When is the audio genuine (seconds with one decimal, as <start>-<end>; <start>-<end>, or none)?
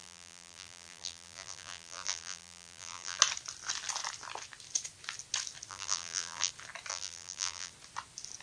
3.2-5.7; 6.5-6.9; 7.7-8.4